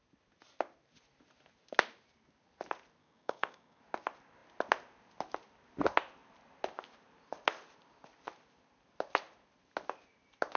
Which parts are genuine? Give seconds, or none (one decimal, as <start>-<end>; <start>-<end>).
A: 0.0-3.0; 3.8-10.6